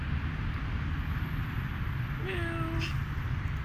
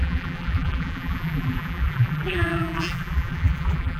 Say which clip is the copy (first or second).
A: second